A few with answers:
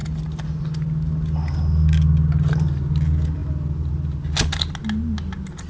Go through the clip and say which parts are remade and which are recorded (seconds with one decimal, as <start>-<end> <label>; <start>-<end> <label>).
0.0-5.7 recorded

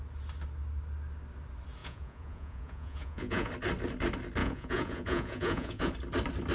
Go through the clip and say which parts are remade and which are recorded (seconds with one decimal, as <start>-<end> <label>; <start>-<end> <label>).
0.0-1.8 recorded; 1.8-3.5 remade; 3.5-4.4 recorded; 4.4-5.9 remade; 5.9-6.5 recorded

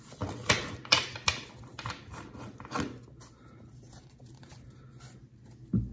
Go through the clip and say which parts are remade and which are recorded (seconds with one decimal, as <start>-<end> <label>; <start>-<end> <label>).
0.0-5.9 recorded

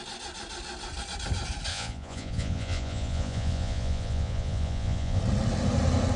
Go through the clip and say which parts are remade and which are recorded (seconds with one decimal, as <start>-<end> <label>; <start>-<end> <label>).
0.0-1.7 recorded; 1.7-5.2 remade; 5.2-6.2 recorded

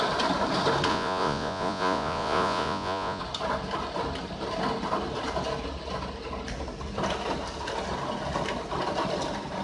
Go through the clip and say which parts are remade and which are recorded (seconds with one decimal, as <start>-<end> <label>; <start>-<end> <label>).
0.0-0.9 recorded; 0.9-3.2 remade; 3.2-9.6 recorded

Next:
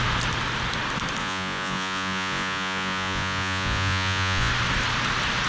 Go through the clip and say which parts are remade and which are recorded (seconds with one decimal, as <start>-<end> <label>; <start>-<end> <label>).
0.0-1.2 recorded; 1.2-4.5 remade; 4.5-5.5 recorded